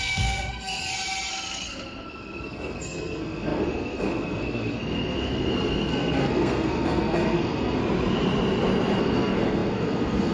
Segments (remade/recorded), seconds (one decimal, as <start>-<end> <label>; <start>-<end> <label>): 0.0-0.8 remade; 0.8-1.3 recorded; 1.3-7.8 remade; 7.8-9.0 recorded; 9.0-10.3 remade